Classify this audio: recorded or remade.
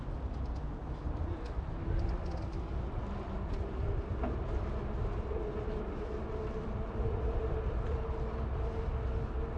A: recorded